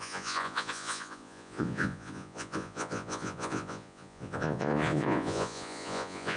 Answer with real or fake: fake